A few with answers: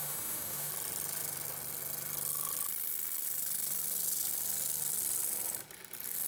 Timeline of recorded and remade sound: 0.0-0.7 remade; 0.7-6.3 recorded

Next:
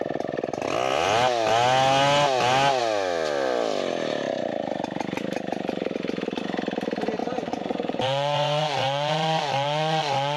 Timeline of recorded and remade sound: 0.0-7.2 recorded; 7.2-10.4 remade

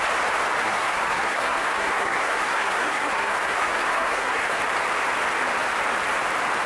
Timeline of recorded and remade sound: 0.0-0.6 recorded; 0.6-4.6 remade; 4.6-6.7 recorded

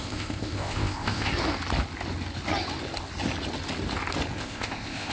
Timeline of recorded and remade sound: 0.0-1.3 remade; 1.3-4.4 recorded; 4.4-5.1 remade

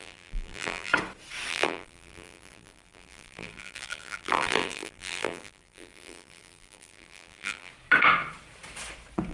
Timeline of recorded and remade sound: 0.0-0.9 remade; 0.9-1.5 recorded; 1.5-7.7 remade; 7.7-9.3 recorded

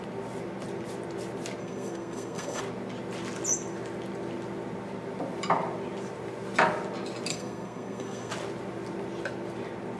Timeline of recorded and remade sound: 0.0-1.6 recorded; 1.6-2.6 remade; 2.6-7.3 recorded; 7.3-8.3 remade; 8.3-10.0 recorded